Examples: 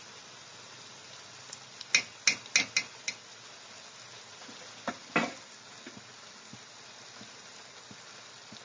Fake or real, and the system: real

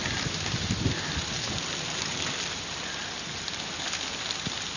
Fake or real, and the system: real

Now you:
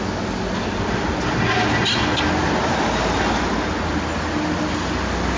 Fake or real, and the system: real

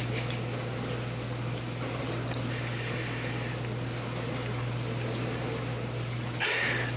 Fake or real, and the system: real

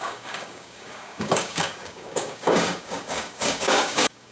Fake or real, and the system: fake, codec, DAC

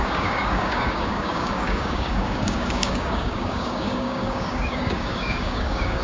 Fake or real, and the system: fake, codec, DAC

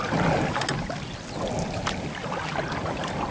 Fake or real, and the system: real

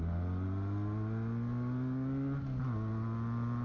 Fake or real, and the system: real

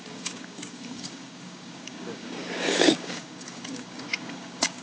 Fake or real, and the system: fake, codec, DAC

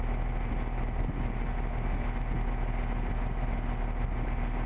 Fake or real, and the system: real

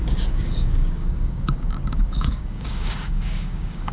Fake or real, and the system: fake, codec, DAC